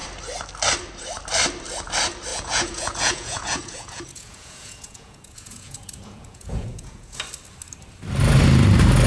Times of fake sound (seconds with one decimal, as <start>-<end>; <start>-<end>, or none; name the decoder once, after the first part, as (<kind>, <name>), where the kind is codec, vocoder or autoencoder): 2.3-7.2 (vocoder, Vocos)